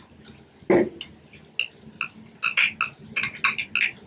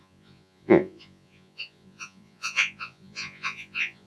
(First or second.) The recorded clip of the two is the first